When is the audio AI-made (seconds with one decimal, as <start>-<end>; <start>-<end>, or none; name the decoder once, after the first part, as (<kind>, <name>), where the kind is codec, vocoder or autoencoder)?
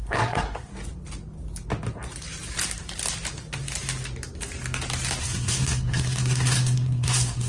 0.0-0.7 (codec, SNAC); 5.2-7.5